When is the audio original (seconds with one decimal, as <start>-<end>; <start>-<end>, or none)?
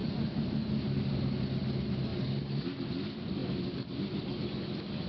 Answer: 0.0-5.1